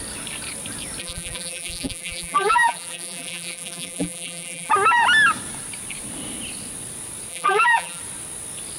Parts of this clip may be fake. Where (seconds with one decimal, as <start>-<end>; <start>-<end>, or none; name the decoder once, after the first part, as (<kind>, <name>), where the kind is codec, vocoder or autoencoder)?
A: 1.0-4.7 (vocoder, BigVGAN v2); 7.3-8.0